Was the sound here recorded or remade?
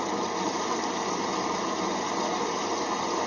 recorded